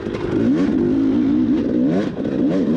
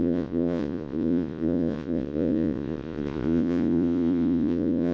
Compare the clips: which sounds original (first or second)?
first